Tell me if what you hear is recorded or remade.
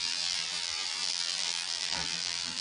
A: remade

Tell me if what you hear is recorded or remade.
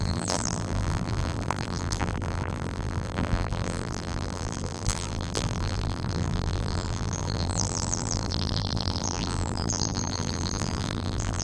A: remade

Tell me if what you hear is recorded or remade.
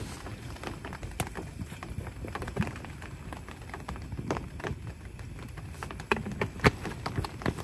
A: recorded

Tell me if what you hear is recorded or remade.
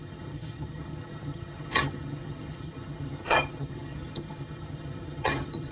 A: remade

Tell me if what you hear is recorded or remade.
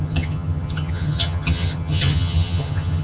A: remade